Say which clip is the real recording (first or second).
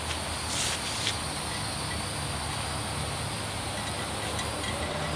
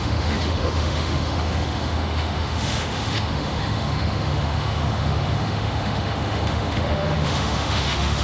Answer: first